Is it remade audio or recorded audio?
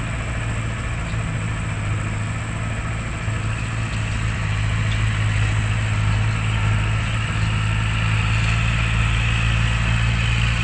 recorded